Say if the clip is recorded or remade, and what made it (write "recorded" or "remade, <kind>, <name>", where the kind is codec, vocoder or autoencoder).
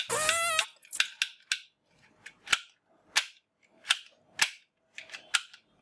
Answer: recorded